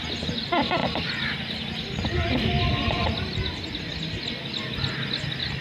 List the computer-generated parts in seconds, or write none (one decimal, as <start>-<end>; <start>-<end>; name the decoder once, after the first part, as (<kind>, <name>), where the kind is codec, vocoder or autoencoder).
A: none